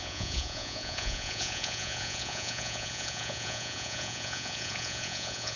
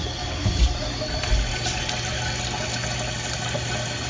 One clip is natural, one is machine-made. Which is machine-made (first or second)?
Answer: first